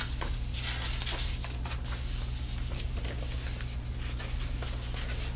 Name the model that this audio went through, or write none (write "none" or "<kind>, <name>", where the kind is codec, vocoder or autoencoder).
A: none